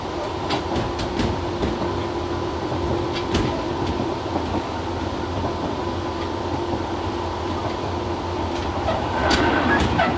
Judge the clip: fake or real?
fake